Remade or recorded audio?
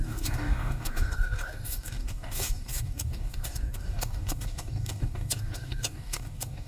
remade